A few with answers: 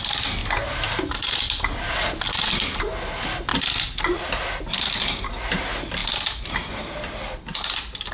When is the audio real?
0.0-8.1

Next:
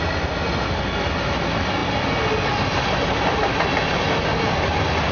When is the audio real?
0.0-5.1

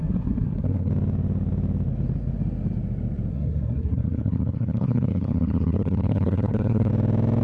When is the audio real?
0.9-3.3; 6.9-7.4